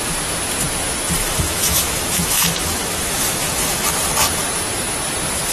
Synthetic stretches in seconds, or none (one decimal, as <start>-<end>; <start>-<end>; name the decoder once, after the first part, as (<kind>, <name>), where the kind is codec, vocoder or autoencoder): 1.2-3.9 (autoencoder, DAC-VAE)